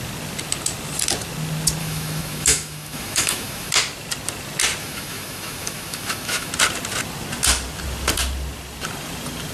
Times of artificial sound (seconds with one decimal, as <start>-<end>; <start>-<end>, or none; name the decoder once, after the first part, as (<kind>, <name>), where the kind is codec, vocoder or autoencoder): 1.8-3.7 (autoencoder, DAC-VAE); 4.8-6.5